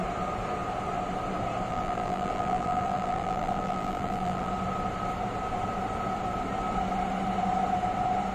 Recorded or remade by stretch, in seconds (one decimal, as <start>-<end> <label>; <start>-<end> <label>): 0.0-1.7 recorded; 1.7-4.5 remade; 4.5-8.3 recorded